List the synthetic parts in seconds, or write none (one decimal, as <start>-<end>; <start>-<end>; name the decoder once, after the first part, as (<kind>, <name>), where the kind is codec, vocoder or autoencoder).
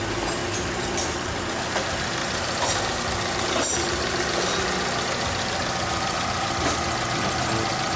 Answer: 0.4-1.3 (vocoder, BigVGAN v2); 2.2-3.0